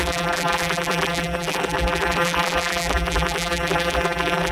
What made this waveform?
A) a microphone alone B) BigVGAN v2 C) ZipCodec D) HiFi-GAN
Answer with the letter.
B